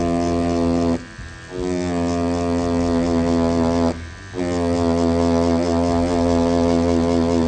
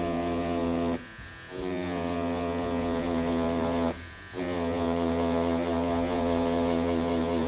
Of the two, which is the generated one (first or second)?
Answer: second